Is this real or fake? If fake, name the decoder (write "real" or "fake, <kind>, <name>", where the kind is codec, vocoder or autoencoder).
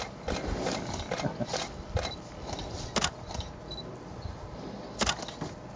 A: real